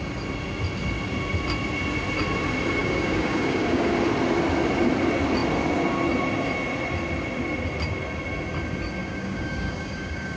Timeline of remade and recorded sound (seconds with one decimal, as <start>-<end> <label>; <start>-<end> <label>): 0.0-2.8 recorded; 2.8-3.9 remade; 3.9-9.0 recorded; 9.0-10.4 remade